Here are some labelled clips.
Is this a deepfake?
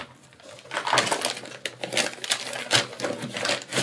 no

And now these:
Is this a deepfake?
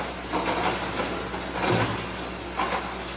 no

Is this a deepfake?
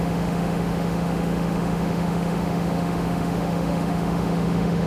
yes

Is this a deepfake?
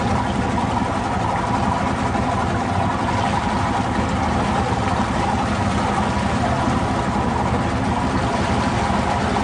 no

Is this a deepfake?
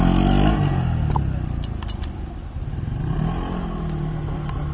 no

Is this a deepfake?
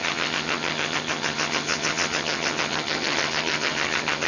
yes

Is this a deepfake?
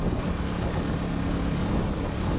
no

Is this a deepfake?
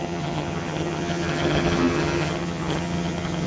yes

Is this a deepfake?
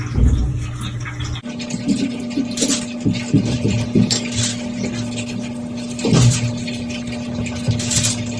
no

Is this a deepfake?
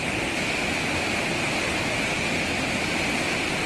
no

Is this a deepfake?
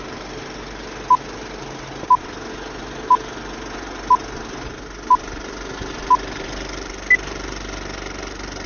no